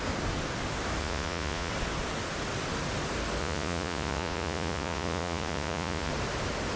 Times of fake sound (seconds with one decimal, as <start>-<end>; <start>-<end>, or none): 1.0-1.7; 3.4-6.1